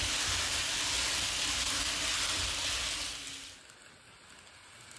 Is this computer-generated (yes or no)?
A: no